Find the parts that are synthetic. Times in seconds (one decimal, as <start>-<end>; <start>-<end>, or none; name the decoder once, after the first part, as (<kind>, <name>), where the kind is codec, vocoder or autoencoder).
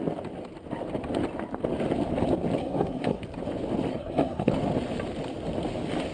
2.6-3.2 (codec, SNAC); 3.9-4.5